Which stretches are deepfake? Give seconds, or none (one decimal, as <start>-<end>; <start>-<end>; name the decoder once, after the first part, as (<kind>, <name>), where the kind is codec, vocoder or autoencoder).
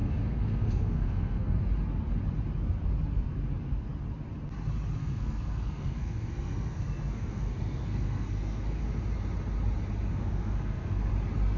0.0-1.6 (codec, SNAC); 5.0-8.8; 10.1-11.1